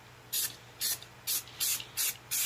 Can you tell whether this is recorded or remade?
recorded